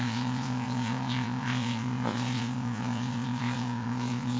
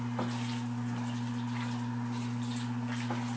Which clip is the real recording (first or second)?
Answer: second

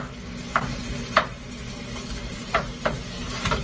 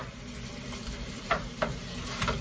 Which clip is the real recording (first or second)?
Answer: first